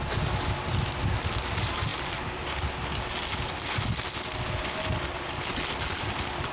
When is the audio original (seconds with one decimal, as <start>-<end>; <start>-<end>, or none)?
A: 0.0-6.5